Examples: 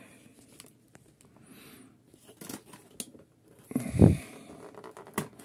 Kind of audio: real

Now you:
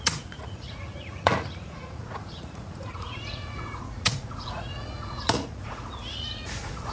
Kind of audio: fake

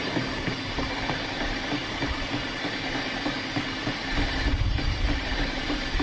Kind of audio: real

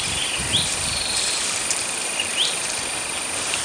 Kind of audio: fake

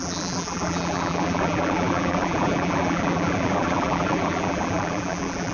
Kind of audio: fake